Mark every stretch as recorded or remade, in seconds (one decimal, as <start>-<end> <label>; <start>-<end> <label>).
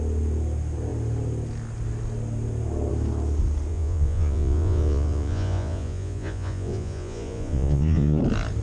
0.0-3.7 recorded; 3.7-8.2 remade; 8.2-8.6 recorded